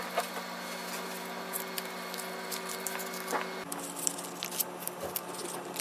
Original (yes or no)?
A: yes